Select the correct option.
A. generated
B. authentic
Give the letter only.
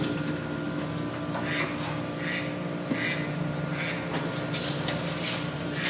B